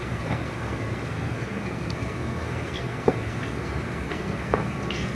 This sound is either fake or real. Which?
fake